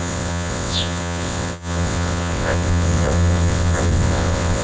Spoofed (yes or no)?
yes